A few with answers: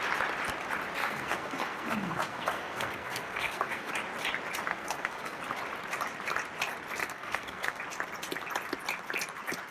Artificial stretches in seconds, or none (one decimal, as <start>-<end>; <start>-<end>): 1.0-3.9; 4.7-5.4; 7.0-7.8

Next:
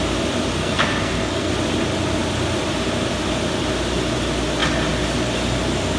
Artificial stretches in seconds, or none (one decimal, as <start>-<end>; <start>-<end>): 0.6-1.5

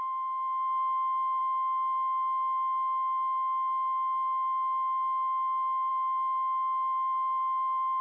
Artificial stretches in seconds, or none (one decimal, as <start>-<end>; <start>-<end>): none

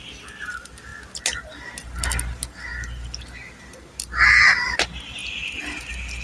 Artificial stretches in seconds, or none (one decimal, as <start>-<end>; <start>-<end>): none

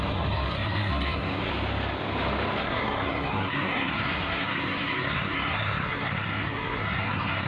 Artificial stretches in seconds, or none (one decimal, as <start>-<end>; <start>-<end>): 0.0-1.5; 2.6-7.5

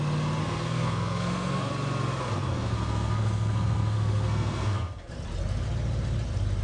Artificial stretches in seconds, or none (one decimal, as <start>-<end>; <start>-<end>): 0.4-1.7; 2.5-5.1

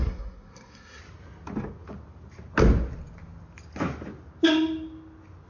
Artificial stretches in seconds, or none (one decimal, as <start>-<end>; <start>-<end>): 0.0-1.0